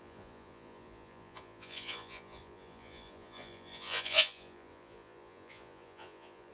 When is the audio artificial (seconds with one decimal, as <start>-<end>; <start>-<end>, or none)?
0.0-6.5